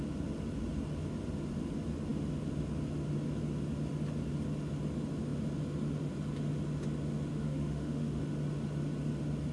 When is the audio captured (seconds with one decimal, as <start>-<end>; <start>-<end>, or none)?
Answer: 0.0-7.3; 8.2-9.5